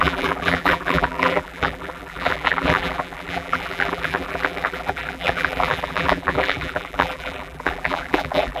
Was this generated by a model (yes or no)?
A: yes